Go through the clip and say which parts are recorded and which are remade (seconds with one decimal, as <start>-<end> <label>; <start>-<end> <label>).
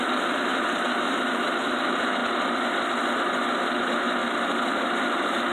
0.0-2.2 remade; 2.2-3.6 recorded; 3.6-4.2 remade; 4.2-4.7 recorded; 4.7-5.5 remade